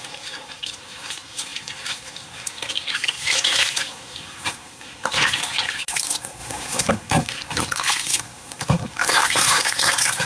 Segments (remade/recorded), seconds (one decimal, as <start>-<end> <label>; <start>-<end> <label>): 0.0-10.3 remade